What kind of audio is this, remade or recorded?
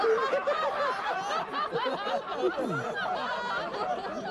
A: recorded